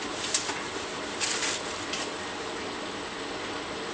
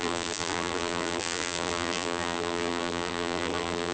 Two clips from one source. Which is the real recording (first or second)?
first